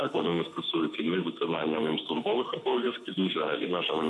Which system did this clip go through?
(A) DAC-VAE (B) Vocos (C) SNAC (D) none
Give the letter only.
A